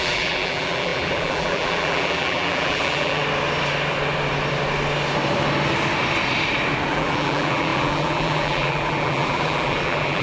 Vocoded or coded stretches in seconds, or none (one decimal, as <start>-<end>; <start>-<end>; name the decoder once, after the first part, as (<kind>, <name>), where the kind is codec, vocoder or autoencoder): 0.0-3.2 (vocoder, BigVGAN v2); 6.9-10.2